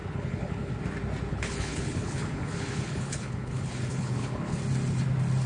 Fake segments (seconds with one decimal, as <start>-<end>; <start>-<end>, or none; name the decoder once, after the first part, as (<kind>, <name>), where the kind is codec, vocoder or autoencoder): 0.0-0.7 (codec, HILCodec); 1.3-4.6